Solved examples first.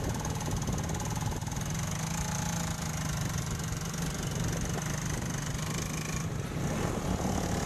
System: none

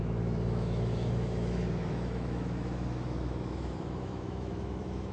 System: autoencoder, DAC-VAE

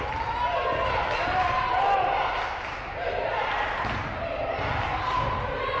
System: none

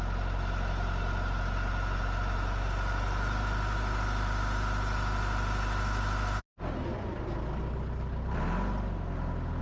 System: none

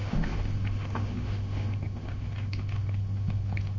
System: autoencoder, DAC-VAE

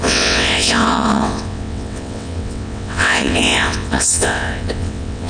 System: vocoder, WaveNeXt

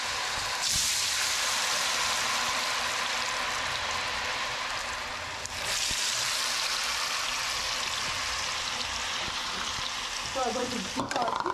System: vocoder, BigVGAN v2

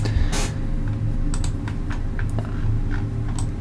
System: none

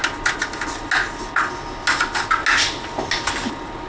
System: none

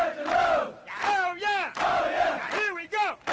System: none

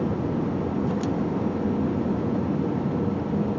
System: none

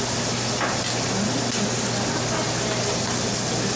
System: none